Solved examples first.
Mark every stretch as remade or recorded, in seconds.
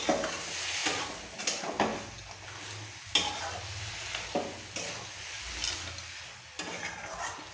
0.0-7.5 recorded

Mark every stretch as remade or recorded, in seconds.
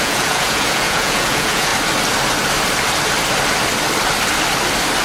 0.0-1.7 remade; 1.7-5.0 recorded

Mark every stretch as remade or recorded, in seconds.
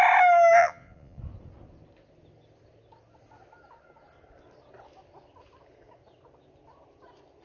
0.0-0.6 recorded; 0.6-1.2 remade; 1.2-7.4 recorded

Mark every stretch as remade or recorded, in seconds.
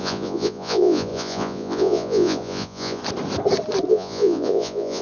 0.0-3.0 remade; 3.0-3.9 recorded; 3.9-5.0 remade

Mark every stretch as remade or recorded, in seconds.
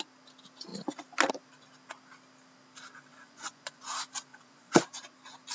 0.0-3.1 recorded; 3.1-3.8 remade; 3.8-4.3 recorded; 4.3-5.1 remade; 5.1-5.5 recorded